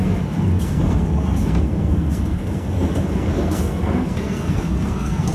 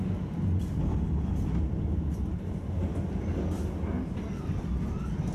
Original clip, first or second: second